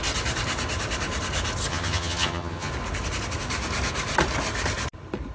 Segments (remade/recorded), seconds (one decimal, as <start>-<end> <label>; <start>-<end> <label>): 0.0-1.7 recorded; 1.7-2.7 remade; 2.7-5.3 recorded